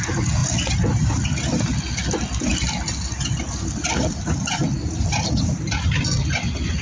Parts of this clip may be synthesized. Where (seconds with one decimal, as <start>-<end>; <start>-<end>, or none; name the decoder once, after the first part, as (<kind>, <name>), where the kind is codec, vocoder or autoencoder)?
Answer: none